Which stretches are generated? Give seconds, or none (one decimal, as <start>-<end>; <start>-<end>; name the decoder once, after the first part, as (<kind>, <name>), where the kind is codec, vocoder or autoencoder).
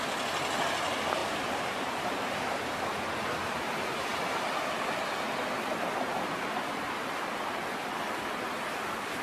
1.2-2.6 (vocoder, BigVGAN v2)